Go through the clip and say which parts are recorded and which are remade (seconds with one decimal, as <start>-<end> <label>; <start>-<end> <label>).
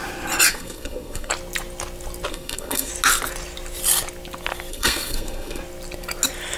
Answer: 0.0-0.5 recorded; 0.5-1.3 remade; 1.3-2.3 recorded; 2.3-2.9 remade; 2.9-4.7 recorded; 4.7-5.6 remade; 5.6-6.6 recorded